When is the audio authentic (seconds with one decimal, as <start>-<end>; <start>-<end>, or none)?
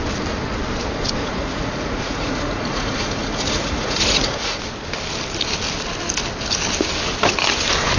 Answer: 0.0-1.2; 4.6-8.0